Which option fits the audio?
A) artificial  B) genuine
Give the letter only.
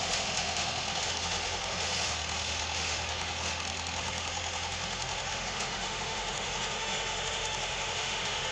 A